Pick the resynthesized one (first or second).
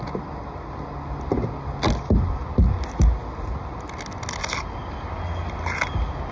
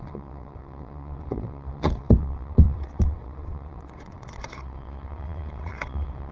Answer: second